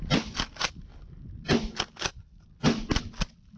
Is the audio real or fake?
real